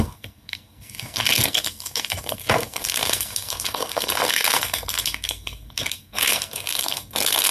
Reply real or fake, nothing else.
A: fake